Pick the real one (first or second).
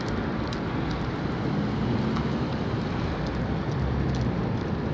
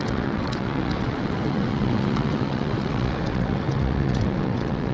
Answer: first